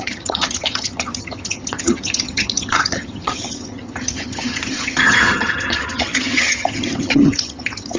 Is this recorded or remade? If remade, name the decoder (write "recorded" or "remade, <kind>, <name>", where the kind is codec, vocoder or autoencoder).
remade, vocoder, HiFi-GAN